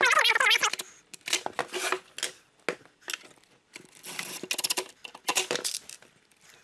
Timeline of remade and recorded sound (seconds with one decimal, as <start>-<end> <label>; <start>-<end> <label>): 0.0-0.6 remade; 0.6-4.6 recorded; 4.6-6.6 remade

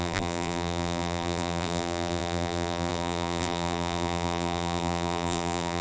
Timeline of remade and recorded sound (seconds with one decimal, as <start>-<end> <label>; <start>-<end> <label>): 0.0-5.8 remade

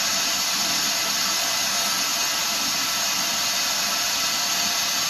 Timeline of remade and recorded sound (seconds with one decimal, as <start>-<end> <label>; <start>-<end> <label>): 0.0-2.1 recorded; 2.1-3.7 remade; 3.7-5.1 recorded